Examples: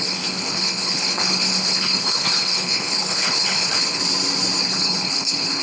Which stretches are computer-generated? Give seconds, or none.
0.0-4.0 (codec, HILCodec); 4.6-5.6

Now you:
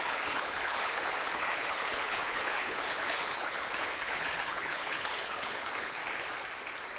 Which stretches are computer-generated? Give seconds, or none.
0.0-6.0 (codec, HILCodec)

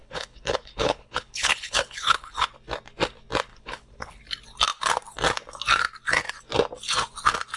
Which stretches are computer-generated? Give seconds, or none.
0.0-2.5 (codec, HILCodec); 3.5-4.2

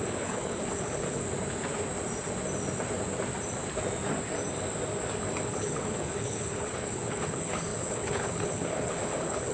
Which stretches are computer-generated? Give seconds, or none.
0.0-1.2 (codec, HILCodec); 5.5-9.5